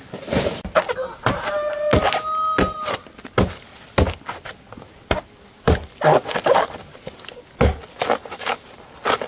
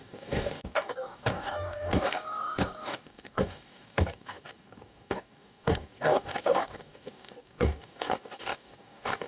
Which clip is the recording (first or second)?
first